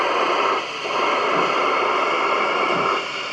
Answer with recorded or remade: recorded